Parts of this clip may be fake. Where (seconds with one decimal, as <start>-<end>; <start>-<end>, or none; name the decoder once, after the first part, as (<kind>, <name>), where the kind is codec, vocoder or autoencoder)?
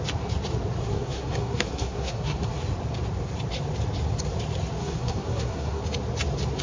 0.8-2.5 (codec, SNAC); 4.8-5.8